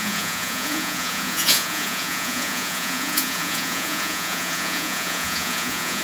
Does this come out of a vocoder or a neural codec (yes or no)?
yes